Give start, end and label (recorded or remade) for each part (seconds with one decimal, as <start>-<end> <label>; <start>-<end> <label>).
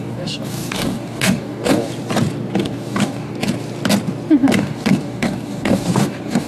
0.0-1.9 remade; 1.9-2.6 recorded; 2.6-3.3 remade; 3.3-4.3 recorded; 4.3-6.5 remade